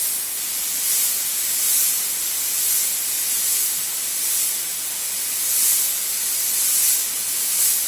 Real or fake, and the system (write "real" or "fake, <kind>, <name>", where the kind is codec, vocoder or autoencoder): real